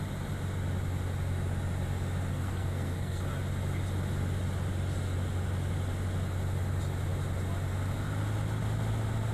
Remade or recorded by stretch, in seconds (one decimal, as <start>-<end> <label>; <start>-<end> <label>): 0.0-2.3 recorded; 2.3-3.2 remade; 3.2-9.3 recorded